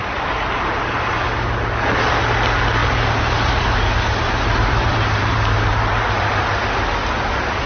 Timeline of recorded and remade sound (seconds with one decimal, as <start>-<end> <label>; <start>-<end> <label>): 0.0-2.8 recorded; 2.8-6.1 remade; 6.1-7.7 recorded